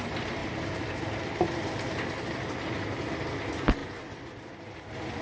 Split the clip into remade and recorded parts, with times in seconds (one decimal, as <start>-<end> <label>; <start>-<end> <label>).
0.0-0.4 recorded; 0.4-1.2 remade; 1.2-5.2 recorded